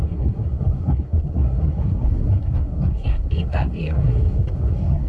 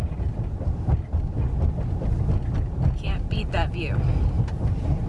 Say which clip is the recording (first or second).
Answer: second